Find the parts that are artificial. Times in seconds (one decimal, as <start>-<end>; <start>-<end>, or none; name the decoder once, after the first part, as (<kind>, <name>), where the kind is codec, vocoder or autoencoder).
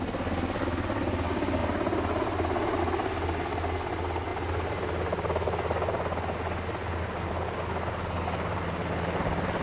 none